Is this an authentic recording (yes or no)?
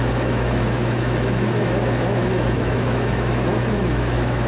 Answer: no